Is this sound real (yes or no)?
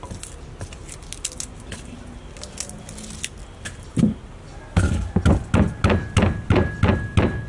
yes